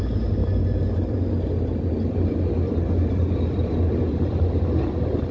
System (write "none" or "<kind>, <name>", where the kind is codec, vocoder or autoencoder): none